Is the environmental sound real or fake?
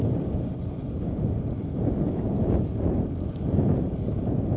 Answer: real